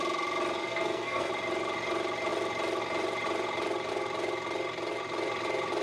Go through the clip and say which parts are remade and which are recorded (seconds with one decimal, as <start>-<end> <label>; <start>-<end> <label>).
0.0-0.6 recorded; 0.6-1.3 remade; 1.3-5.8 recorded